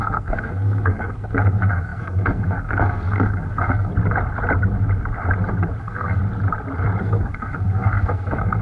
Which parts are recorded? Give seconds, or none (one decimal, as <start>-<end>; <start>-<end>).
3.9-5.8; 6.2-7.0